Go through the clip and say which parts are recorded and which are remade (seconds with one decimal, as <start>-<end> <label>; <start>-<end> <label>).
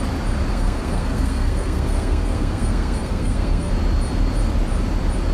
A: 0.0-0.5 recorded; 0.5-3.7 remade; 3.7-5.3 recorded